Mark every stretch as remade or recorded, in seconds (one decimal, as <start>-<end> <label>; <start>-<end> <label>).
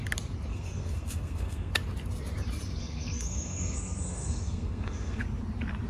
0.0-0.5 recorded; 0.5-1.7 remade; 1.7-2.8 recorded; 2.8-5.2 remade; 5.2-5.9 recorded